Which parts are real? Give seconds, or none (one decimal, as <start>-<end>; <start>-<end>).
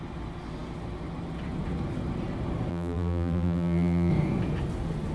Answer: 0.0-2.7; 4.1-5.1